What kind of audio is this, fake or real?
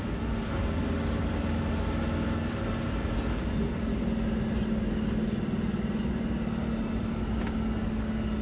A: real